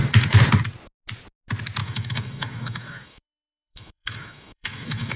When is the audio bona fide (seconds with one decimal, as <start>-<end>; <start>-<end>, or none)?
0.0-1.8

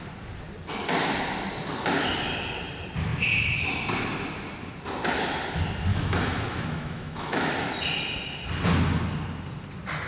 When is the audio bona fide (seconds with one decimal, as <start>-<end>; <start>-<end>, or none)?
0.0-5.9; 7.5-10.1

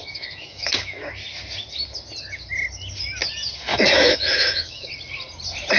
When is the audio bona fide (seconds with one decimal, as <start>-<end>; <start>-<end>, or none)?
1.1-3.7; 4.9-5.8